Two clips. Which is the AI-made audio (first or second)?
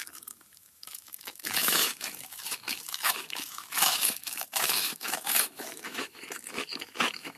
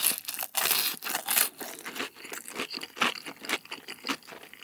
first